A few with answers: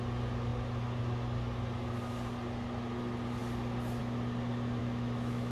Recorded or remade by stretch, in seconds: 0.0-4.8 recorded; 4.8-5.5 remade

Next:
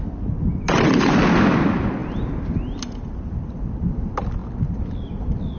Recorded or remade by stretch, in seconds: 0.0-5.6 recorded

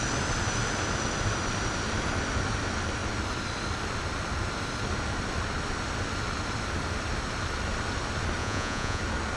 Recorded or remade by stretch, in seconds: 0.0-8.4 recorded; 8.4-9.0 remade; 9.0-9.4 recorded

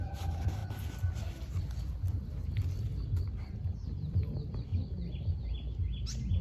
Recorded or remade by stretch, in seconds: 0.0-0.6 remade; 0.6-1.6 recorded; 1.6-2.9 remade; 2.9-3.6 recorded; 3.6-4.7 remade; 4.7-6.4 recorded

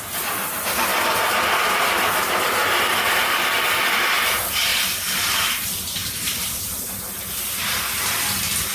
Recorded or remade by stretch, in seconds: 0.0-4.7 recorded; 4.7-5.4 remade; 5.4-6.0 recorded; 6.0-6.6 remade; 6.6-8.7 recorded